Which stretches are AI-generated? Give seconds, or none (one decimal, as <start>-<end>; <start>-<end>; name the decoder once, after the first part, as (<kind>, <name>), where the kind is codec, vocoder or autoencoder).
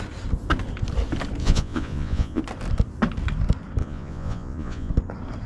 1.4-2.4 (vocoder, Vocos); 3.8-4.9